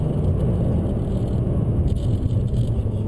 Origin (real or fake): real